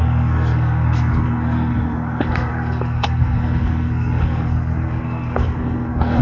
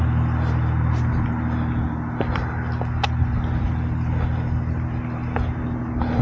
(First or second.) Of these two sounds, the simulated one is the first